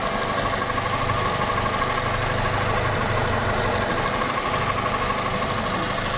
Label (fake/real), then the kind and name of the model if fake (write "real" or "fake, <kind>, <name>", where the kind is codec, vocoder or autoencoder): real